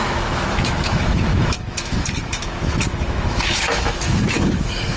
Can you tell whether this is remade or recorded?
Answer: remade